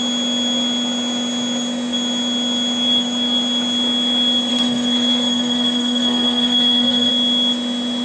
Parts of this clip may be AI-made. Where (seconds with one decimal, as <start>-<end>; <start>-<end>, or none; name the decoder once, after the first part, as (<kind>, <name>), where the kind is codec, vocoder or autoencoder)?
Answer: 4.5-7.1 (codec, SNAC)